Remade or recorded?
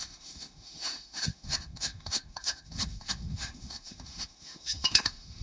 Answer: remade